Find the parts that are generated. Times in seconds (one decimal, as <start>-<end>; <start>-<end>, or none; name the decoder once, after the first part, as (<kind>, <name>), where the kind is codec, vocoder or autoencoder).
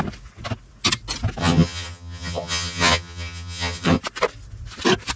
1.4-4.0 (vocoder, HiFi-GAN)